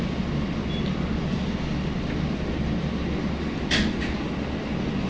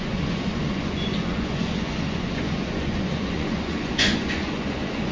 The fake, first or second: second